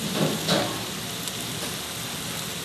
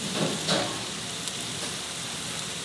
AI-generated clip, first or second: second